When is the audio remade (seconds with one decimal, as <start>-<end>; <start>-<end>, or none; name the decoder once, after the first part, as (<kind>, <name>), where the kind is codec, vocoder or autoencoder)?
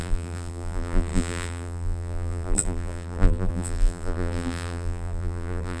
0.0-5.8 (vocoder, BigVGAN v2)